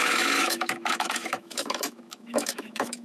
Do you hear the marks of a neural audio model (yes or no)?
yes